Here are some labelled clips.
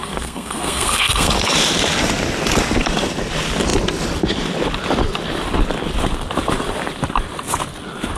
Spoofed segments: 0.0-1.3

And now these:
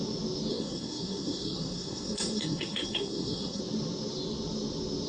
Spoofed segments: 0.5-3.6

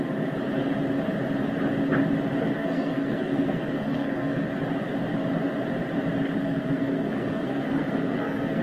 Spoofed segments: 2.5-4.5; 6.4-8.6

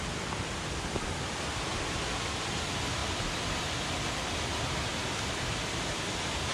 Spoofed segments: none

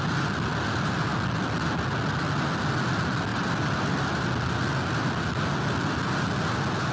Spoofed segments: none

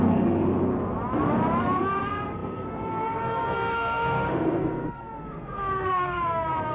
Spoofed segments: 0.0-0.4; 1.6-6.7

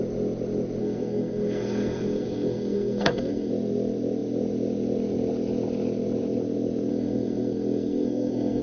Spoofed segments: 0.8-3.5; 6.9-8.6